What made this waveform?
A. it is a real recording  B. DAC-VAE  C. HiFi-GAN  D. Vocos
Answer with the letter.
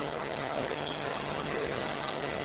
C